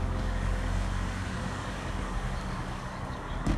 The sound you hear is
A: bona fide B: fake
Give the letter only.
B